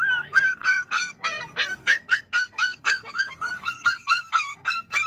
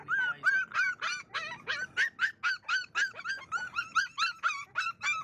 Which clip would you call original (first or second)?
second